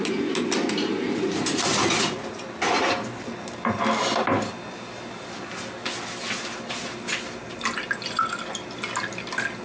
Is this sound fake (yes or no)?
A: no